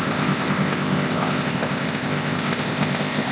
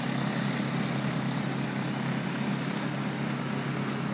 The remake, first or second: first